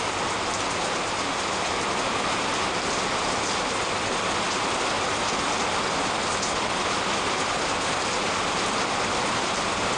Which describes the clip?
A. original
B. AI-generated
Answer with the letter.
A